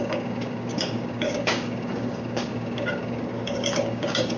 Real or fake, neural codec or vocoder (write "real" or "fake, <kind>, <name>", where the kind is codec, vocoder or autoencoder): fake, codec, DAC